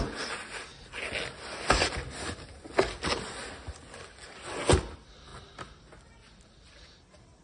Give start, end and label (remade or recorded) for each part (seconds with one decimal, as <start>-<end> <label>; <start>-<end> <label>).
0.0-7.4 recorded